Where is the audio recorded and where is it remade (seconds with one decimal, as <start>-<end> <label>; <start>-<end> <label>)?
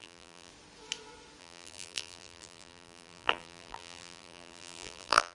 0.0-0.5 remade; 0.5-1.4 recorded; 1.4-5.3 remade